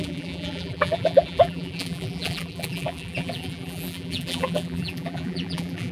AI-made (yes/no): yes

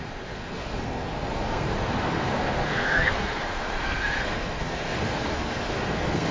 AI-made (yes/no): yes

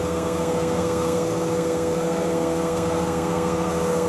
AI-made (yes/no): yes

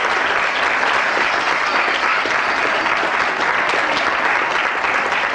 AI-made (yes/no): no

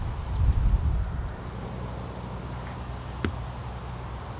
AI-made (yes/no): no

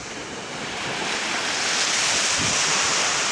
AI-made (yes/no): no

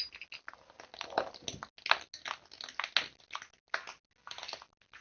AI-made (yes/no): no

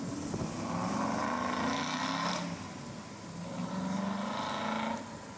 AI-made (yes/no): no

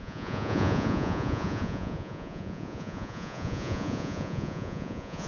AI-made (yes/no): yes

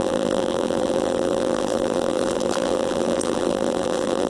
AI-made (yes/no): yes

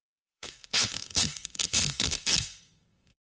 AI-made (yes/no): yes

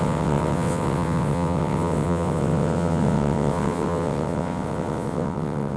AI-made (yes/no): yes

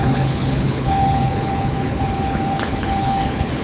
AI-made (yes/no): yes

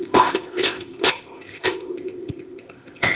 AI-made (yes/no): yes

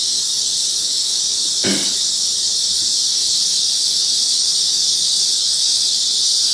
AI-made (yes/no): yes